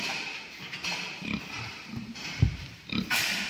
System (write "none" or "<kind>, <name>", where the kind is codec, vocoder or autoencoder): vocoder, BigVGAN v2